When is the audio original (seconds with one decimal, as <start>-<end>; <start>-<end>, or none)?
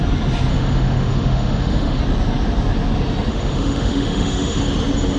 0.0-0.5; 2.0-3.3; 4.6-5.2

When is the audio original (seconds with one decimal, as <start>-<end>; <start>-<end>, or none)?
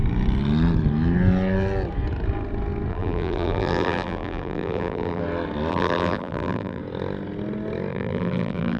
0.0-2.9; 5.2-5.7; 6.8-7.9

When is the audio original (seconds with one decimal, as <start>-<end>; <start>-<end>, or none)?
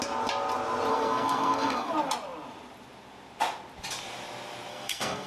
0.0-0.9; 1.9-4.7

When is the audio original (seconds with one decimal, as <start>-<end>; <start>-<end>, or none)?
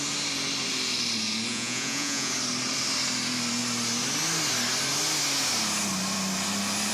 0.0-1.5; 2.3-6.9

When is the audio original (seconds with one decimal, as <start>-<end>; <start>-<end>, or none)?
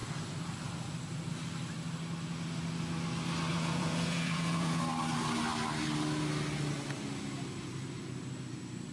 0.0-3.5; 4.8-8.9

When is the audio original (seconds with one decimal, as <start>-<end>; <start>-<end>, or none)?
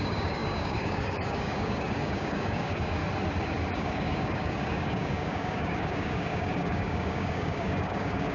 3.0-3.7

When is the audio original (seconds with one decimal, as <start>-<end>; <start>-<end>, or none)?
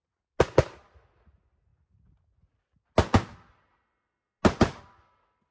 0.0-5.5